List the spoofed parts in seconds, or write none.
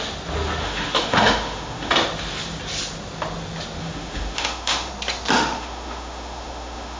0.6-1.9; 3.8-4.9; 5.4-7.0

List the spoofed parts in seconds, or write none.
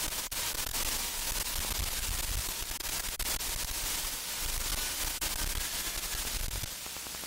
none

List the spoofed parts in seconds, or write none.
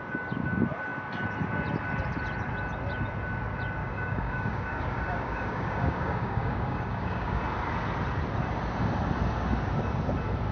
3.8-7.4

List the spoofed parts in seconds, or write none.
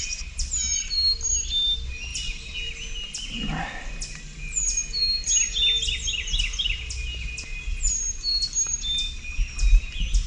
none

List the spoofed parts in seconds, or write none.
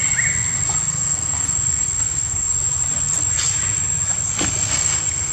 0.9-2.5; 4.7-5.3